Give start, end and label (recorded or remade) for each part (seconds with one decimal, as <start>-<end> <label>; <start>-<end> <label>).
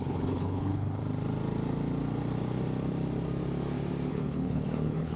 0.0-1.0 remade; 1.0-4.1 recorded; 4.1-5.2 remade